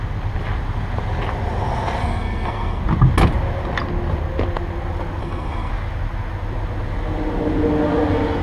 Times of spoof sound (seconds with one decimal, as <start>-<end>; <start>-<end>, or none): 2.0-2.8; 5.2-5.7

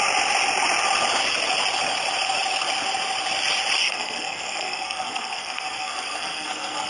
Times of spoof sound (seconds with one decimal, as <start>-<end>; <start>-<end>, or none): 3.8-6.9